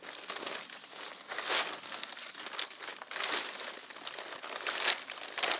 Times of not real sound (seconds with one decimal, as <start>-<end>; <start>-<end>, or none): none